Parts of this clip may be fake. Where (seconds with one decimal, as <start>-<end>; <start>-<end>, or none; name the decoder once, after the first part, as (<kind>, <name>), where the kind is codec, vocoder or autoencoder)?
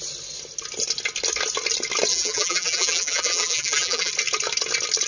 2.1-4.1 (vocoder, BigVGAN v2)